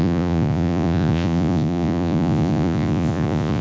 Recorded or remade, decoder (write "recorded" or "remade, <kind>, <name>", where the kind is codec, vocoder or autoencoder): remade, vocoder, Vocos